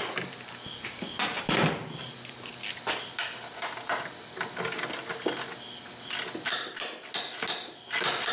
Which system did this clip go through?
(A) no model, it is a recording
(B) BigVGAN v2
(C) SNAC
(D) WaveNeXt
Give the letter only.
A